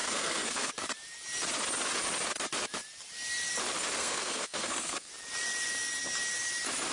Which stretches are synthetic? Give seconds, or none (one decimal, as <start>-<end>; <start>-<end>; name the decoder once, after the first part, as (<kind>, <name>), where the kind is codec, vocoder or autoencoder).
0.0-0.7 (codec, SNAC); 4.0-5.1